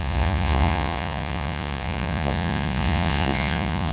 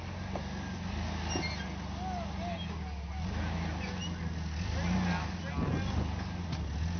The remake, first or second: first